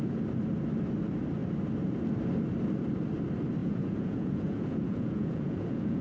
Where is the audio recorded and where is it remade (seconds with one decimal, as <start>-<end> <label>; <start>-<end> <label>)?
0.0-3.6 recorded; 3.6-6.0 remade